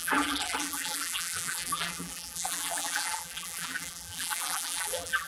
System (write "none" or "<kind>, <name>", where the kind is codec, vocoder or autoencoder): vocoder, BigVGAN v2